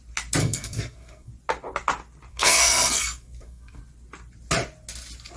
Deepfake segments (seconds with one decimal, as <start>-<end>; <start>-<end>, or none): 0.4-1.3; 2.3-3.8